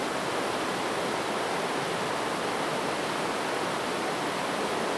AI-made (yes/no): no